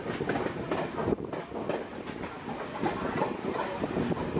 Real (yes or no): yes